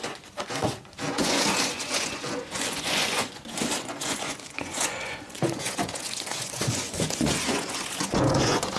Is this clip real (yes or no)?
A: no